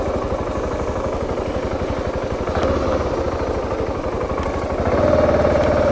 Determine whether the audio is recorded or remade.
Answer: recorded